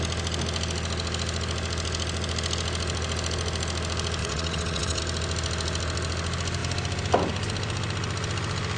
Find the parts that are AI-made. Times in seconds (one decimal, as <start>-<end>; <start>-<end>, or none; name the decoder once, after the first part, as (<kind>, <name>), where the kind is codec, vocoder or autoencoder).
4.2-5.0 (vocoder, WaveNeXt)